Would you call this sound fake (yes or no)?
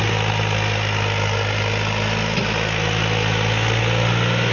no